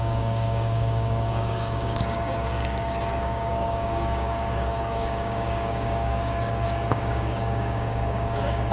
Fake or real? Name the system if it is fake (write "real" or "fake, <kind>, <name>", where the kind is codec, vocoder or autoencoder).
fake, codec, DAC